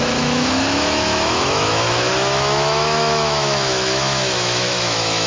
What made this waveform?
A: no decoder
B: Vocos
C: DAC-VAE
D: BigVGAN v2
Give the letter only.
C